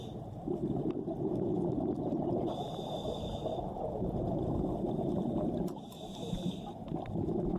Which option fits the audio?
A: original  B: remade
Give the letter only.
A